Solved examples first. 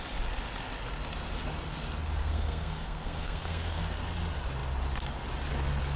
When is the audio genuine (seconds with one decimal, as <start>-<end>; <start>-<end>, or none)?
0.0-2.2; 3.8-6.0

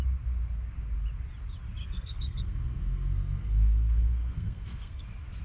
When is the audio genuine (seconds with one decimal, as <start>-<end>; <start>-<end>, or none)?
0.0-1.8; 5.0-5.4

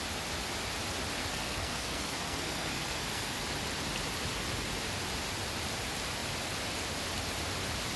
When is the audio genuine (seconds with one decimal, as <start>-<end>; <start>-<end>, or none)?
0.0-1.2; 3.4-8.0

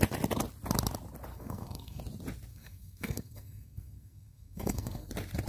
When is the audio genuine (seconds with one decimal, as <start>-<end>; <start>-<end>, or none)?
0.0-1.3; 2.0-2.5; 5.1-5.5

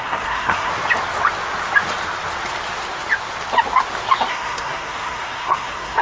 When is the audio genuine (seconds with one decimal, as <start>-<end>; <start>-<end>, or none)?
0.7-4.3

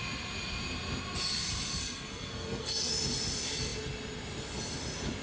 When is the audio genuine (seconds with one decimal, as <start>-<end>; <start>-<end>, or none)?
0.0-1.8; 2.9-5.2

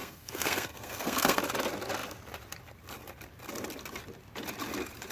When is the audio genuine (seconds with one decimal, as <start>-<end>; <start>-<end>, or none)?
1.4-5.1

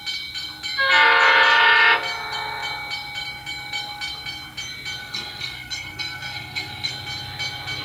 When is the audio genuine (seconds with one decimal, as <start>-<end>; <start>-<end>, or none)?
0.0-5.0; 6.9-7.8